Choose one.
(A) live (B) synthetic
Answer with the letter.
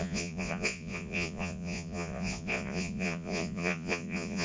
B